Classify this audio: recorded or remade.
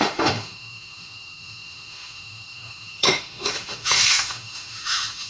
remade